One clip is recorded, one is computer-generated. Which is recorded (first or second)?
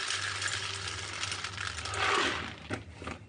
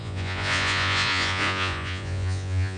first